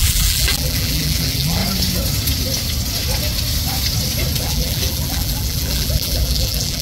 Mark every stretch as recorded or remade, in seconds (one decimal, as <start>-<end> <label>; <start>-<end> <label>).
0.0-1.6 remade; 1.6-4.4 recorded; 4.4-6.8 remade